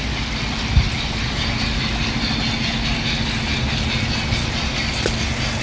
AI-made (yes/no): no